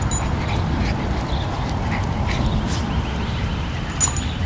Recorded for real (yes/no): yes